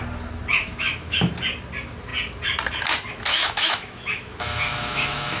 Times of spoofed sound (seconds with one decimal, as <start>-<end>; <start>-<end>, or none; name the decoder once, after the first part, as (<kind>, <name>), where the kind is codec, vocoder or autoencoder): 0.5-1.3 (autoencoder, DAC-VAE); 3.3-5.4